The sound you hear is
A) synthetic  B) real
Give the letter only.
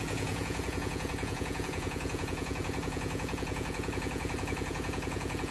A